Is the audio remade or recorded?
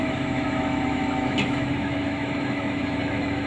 remade